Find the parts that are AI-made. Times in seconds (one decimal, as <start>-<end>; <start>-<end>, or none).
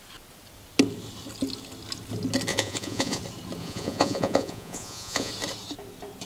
2.5-3.2; 3.6-5.3